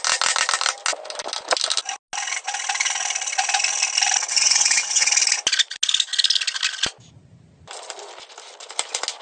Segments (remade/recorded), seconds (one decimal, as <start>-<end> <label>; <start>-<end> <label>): 0.0-4.3 recorded; 4.3-5.1 remade; 5.1-9.2 recorded